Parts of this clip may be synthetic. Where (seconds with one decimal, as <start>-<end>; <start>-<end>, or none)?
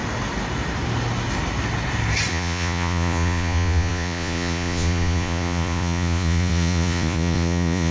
2.3-7.9